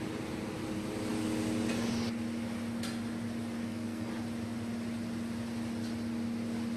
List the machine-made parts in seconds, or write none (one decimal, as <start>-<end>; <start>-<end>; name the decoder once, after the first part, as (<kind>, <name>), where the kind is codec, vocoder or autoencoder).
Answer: 3.6-4.1 (codec, SNAC)